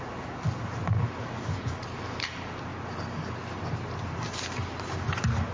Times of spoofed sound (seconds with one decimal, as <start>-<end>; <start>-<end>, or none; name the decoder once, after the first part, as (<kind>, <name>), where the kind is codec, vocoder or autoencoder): none

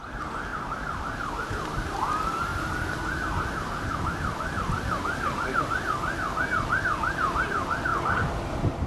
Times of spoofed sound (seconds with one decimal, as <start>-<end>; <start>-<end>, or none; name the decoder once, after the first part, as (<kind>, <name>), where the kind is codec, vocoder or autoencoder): 0.5-1.9 (vocoder, BigVGAN v2); 2.5-5.7

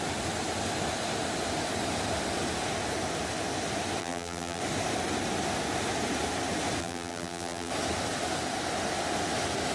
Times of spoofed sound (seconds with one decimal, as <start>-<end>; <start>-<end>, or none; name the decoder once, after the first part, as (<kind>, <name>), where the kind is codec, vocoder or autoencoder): 4.0-4.6 (vocoder, BigVGAN v2); 6.8-7.7

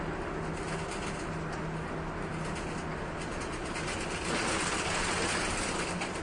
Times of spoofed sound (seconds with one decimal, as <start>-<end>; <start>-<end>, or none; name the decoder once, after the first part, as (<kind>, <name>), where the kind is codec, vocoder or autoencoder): none

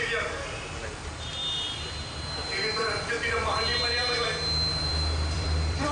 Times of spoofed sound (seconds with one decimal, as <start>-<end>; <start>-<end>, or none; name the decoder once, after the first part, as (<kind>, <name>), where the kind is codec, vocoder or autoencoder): 0.0-3.7 (vocoder, BigVGAN v2); 4.7-5.9

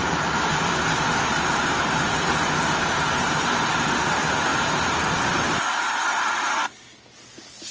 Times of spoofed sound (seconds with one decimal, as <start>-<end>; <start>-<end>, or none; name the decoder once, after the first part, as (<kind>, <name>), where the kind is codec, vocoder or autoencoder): 0.0-1.0 (vocoder, BigVGAN v2); 1.6-2.3; 4.5-5.7

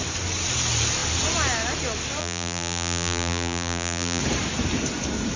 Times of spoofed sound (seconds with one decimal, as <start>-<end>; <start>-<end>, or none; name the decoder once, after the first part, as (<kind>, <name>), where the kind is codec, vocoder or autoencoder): 2.2-4.2 (vocoder, BigVGAN v2)